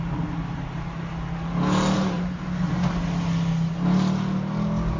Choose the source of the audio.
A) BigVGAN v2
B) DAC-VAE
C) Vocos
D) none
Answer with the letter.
D